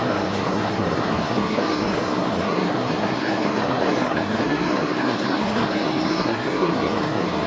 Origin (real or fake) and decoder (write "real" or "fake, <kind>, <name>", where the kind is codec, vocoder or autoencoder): fake, codec, SNAC